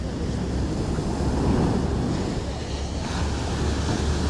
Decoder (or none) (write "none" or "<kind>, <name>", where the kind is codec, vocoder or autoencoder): none